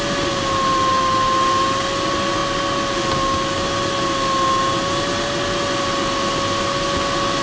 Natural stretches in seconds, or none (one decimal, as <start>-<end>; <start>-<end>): 0.0-7.4